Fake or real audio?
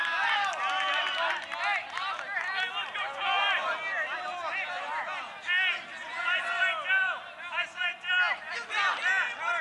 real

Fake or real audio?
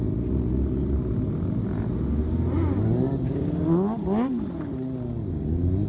real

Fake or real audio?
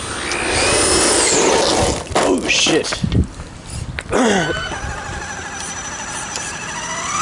real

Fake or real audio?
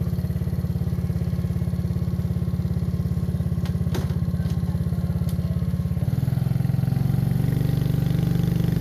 real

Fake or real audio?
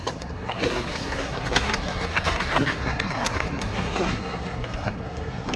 fake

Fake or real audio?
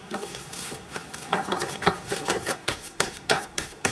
fake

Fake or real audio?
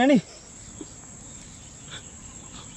real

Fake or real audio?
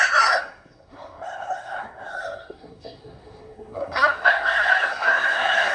fake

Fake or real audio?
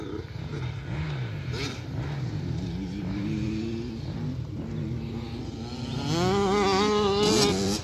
real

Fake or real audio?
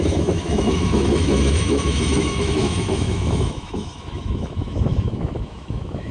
fake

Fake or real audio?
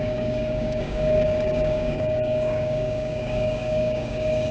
fake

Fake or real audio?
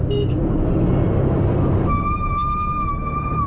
real